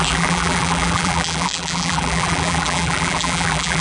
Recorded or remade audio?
remade